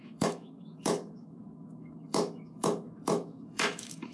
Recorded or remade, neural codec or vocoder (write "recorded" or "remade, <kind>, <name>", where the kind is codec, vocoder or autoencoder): remade, autoencoder, DAC-VAE